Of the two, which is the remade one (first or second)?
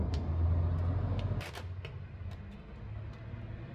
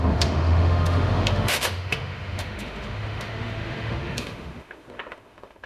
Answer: second